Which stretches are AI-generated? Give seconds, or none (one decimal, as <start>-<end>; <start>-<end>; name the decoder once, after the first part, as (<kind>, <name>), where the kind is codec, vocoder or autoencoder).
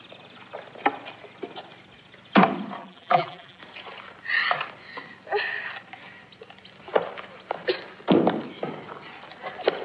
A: 2.8-3.6 (vocoder, BigVGAN v2)